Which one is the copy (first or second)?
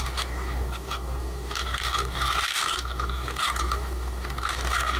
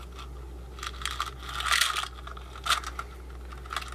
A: first